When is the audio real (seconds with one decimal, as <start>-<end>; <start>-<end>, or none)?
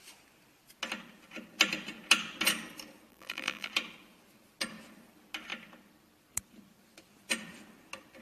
0.0-3.1; 3.7-8.2